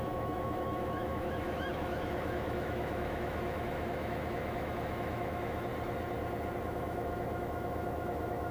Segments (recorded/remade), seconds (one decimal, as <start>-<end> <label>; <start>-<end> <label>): 0.0-5.7 remade; 5.7-6.6 recorded; 6.6-8.5 remade